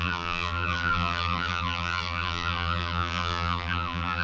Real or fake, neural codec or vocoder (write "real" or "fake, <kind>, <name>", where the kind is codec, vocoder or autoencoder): fake, vocoder, BigVGAN v2